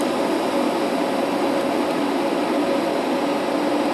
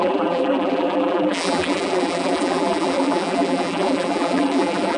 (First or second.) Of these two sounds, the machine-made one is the second